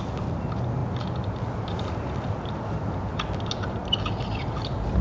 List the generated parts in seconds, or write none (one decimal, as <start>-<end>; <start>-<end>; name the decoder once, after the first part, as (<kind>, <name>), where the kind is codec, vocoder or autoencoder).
none

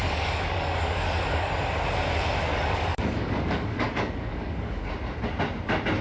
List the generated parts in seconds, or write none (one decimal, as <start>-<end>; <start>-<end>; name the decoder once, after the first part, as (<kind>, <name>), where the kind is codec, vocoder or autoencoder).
0.0-1.5 (codec, DAC); 2.5-4.9

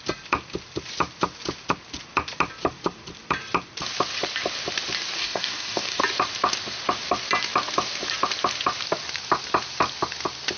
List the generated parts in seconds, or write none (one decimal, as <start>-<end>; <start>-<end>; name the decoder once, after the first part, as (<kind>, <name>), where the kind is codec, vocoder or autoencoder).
5.2-6.0 (codec, DAC)

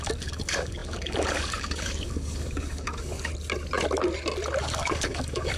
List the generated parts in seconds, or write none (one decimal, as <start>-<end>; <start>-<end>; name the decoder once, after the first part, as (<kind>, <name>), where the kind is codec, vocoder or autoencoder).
0.0-3.3 (codec, DAC); 4.6-5.6

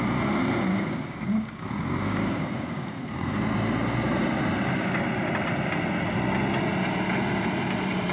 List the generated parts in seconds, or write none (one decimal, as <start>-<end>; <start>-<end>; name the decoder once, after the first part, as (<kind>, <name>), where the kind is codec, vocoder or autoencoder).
0.7-3.4 (codec, DAC)

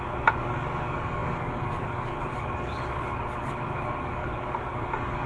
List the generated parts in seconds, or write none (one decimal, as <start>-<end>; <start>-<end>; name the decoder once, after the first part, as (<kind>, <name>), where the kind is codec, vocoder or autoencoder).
0.0-5.3 (codec, DAC)

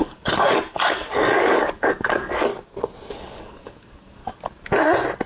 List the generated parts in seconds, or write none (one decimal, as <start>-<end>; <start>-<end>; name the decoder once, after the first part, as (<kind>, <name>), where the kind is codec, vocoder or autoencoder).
0.0-2.5 (codec, DAC); 3.1-4.2

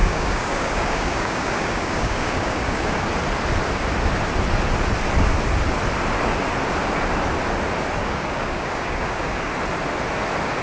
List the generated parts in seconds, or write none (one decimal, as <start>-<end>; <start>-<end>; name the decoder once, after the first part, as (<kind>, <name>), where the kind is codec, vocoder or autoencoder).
0.0-3.1 (codec, DAC); 8.0-9.5